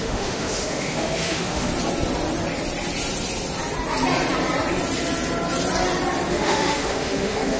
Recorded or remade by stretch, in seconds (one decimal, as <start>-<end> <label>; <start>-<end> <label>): 0.0-1.7 remade; 1.7-6.3 recorded; 6.3-7.6 remade